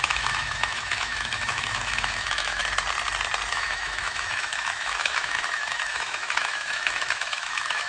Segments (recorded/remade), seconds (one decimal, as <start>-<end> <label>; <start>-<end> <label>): 0.0-2.6 remade; 2.6-3.5 recorded; 3.5-7.9 remade